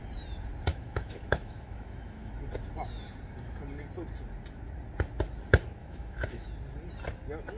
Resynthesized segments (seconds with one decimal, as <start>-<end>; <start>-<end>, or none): 0.7-2.3; 5.8-6.5